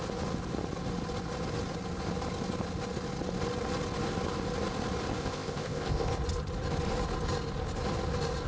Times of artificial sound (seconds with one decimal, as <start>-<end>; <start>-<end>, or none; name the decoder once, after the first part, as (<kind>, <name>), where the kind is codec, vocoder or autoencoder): 5.2-6.1 (codec, ZipCodec)